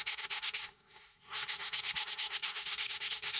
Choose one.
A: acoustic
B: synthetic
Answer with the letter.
B